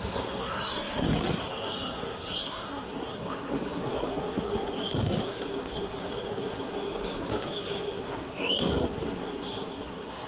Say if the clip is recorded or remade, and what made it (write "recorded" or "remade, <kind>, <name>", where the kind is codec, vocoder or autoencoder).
remade, codec, SNAC